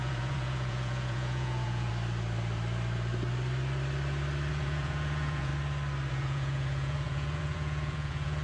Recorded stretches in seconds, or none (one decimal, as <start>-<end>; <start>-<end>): 1.9-4.5; 5.5-6.1